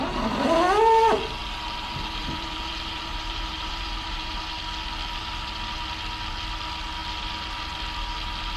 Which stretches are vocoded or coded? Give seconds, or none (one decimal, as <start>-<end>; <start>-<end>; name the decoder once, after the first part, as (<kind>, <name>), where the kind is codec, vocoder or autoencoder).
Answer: 1.4-4.5 (vocoder, BigVGAN v2)